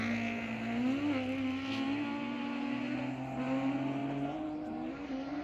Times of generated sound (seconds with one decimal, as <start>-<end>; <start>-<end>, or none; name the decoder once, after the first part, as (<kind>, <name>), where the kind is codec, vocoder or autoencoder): none